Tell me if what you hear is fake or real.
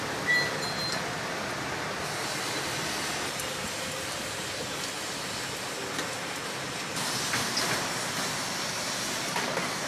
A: real